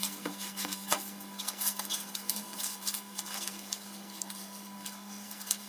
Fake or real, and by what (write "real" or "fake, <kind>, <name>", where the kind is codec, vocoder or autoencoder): fake, codec, SNAC